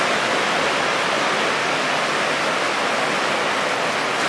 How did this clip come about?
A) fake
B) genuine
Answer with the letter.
B